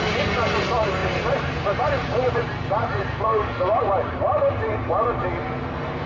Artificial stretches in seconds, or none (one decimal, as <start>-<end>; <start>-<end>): 1.0-4.7